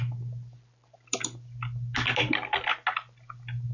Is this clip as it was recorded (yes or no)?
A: yes